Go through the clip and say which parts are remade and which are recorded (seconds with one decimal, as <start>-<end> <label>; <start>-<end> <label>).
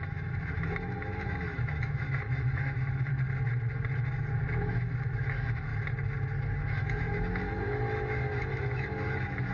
0.0-3.1 remade; 3.1-4.1 recorded; 4.1-5.7 remade; 5.7-6.6 recorded; 6.6-9.5 remade